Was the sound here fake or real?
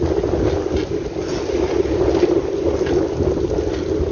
real